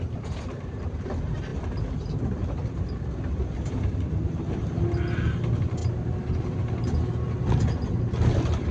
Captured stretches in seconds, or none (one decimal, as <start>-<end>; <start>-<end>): 0.0-8.7